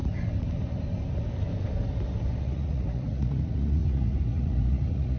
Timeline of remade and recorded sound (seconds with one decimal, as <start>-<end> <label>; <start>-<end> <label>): 0.0-2.4 recorded; 2.4-5.2 remade